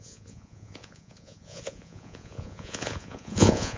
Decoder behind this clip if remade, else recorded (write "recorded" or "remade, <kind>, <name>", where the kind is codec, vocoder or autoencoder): remade, vocoder, Vocos